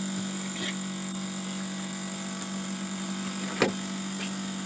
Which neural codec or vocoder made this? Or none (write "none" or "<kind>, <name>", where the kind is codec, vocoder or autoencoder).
none